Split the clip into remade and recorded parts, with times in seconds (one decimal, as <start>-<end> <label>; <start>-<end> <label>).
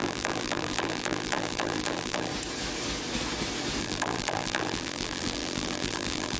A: 0.0-2.3 remade; 2.3-3.8 recorded; 3.8-6.4 remade